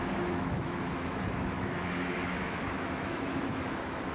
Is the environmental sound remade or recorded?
remade